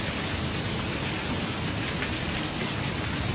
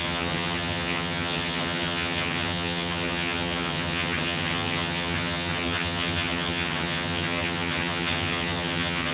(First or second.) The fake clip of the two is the second